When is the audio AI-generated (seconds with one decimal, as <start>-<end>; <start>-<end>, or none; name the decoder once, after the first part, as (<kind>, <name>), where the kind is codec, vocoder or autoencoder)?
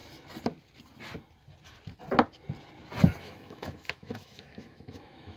3.2-5.4 (autoencoder, DAC-VAE)